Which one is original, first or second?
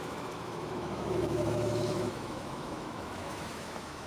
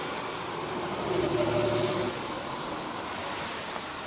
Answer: second